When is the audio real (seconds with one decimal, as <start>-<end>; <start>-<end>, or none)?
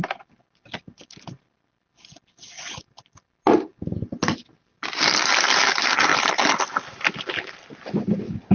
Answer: 0.0-8.5